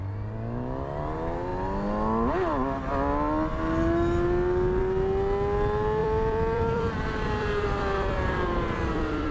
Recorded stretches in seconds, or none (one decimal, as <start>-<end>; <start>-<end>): 0.0-6.0